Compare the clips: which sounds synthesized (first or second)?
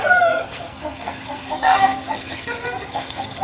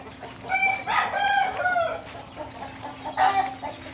first